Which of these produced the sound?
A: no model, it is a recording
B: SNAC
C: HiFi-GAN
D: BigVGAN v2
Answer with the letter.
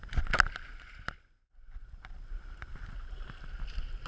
A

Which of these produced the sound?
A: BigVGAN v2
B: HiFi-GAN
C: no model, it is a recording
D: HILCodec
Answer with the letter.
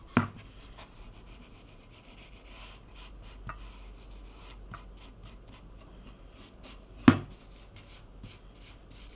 C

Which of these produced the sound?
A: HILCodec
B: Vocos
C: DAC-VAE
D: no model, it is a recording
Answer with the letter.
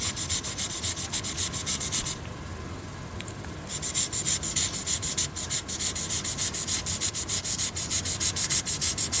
D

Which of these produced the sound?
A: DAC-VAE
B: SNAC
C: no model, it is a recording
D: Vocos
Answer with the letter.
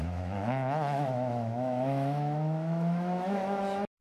A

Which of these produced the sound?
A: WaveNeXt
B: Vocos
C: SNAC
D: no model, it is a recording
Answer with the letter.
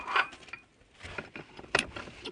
D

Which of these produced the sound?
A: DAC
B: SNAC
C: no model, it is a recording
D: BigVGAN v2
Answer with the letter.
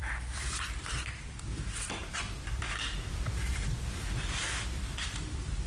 D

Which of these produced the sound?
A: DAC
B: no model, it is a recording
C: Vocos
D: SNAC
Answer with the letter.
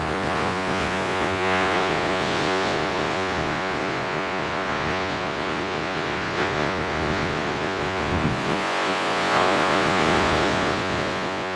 C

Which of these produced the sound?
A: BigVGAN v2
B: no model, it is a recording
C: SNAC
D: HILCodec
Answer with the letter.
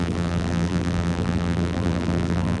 A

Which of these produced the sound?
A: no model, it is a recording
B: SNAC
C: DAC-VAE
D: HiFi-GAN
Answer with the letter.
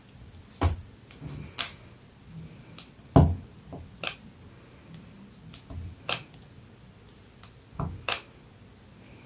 A